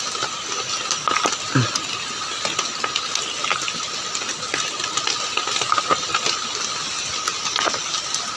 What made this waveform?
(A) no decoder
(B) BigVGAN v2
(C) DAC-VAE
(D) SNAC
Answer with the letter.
A